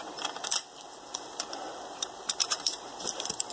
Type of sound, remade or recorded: remade